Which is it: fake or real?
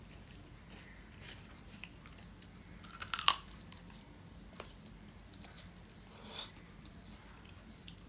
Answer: fake